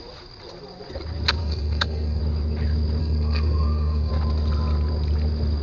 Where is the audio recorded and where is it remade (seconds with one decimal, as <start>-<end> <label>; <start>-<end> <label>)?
0.0-1.4 recorded; 1.4-2.2 remade; 2.2-3.0 recorded; 3.0-4.1 remade; 4.1-5.6 recorded